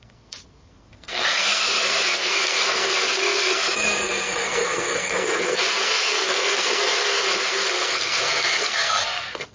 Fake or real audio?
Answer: fake